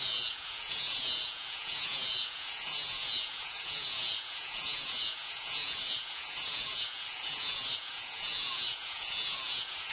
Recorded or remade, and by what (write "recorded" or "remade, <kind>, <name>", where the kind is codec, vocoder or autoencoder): remade, vocoder, Vocos